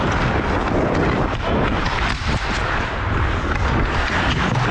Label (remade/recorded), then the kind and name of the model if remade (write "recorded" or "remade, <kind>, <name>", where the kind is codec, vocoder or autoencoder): recorded